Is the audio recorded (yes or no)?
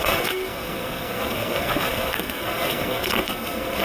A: no